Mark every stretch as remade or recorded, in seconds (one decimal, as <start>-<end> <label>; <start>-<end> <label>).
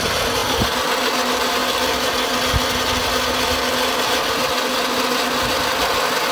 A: 0.0-0.4 recorded; 0.4-1.0 remade; 1.0-6.3 recorded